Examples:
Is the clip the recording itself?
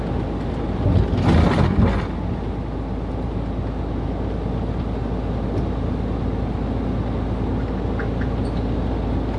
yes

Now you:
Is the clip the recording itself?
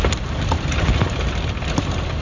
yes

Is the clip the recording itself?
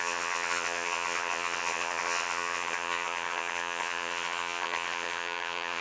no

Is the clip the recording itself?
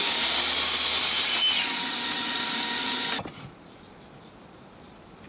yes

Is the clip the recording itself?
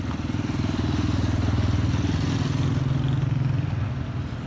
yes